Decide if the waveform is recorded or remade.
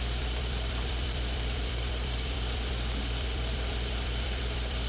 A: remade